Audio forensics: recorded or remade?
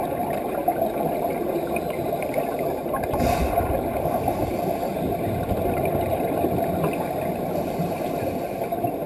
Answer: recorded